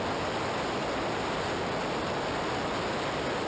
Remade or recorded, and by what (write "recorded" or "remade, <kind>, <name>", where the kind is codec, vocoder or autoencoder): recorded